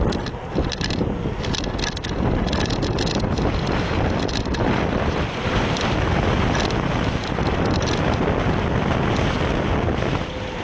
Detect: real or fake real